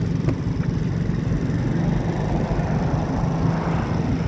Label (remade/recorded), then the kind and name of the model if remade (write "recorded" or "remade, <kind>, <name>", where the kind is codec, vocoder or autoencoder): recorded